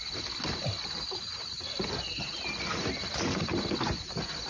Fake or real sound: real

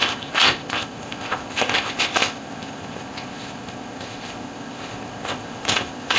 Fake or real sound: fake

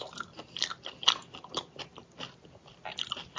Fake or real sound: real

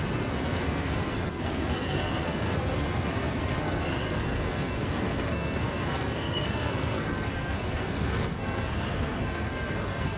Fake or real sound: fake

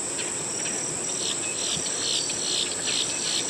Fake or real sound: real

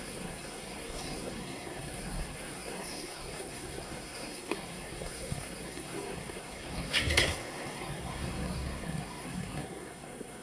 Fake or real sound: fake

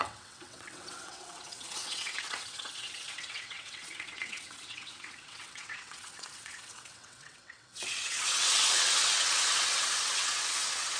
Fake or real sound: fake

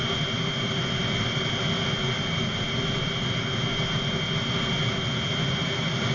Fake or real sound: real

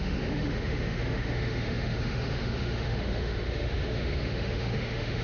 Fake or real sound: fake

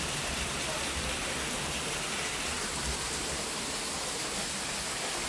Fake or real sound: real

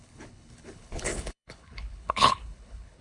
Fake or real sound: fake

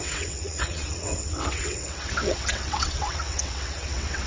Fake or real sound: fake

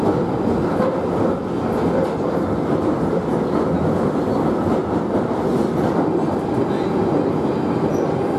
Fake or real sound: real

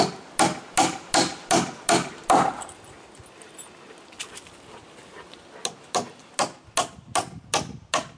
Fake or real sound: real